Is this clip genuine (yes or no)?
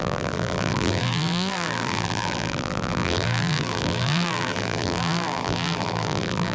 no